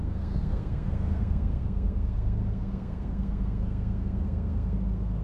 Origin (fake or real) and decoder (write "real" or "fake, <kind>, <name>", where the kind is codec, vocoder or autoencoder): fake, codec, SNAC